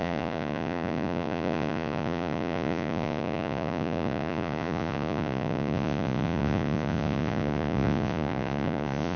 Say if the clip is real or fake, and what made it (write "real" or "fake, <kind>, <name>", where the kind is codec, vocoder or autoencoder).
fake, vocoder, Vocos